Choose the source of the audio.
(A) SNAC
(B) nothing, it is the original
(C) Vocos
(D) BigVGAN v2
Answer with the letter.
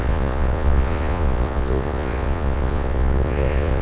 C